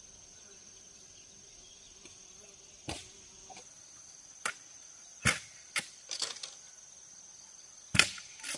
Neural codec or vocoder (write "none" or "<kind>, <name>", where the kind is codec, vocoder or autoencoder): none